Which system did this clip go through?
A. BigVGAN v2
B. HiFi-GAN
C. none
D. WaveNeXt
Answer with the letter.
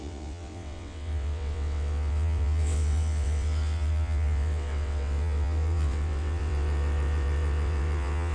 D